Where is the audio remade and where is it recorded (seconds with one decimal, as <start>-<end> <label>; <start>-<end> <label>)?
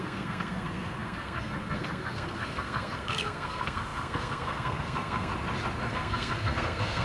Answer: 0.0-5.3 remade; 5.3-5.9 recorded; 5.9-7.0 remade